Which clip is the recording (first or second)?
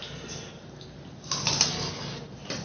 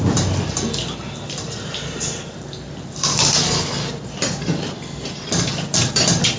first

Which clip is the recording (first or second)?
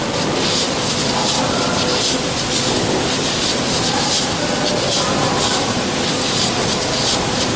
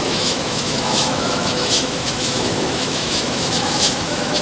first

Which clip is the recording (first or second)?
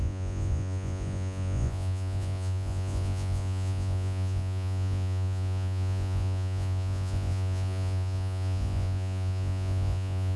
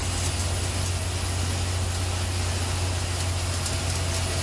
second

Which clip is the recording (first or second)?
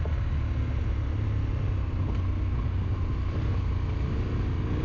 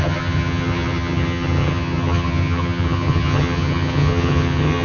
first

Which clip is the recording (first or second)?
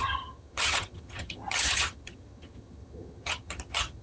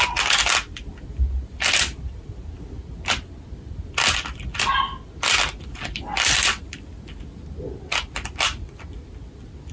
second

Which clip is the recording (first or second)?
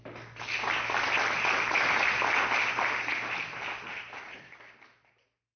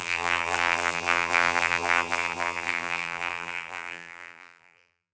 first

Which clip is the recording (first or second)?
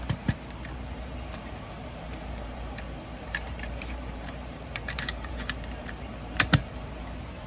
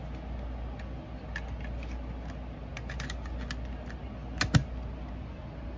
second